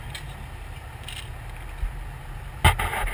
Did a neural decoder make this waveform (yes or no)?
no